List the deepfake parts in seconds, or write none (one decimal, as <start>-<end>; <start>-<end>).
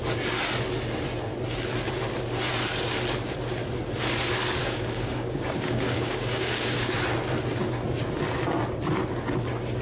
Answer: 4.6-6.9